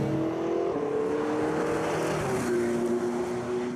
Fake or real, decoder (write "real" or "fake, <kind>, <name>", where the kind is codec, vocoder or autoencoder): real